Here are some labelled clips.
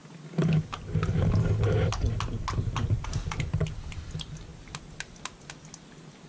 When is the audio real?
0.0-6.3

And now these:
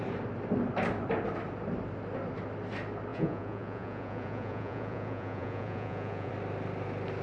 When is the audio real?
0.0-3.1; 6.3-7.2

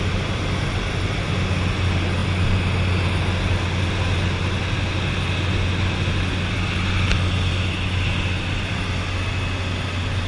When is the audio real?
0.0-10.3

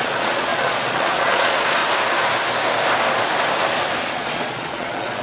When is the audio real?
1.8-4.0